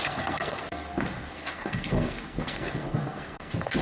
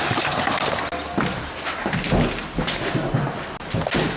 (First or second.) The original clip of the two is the second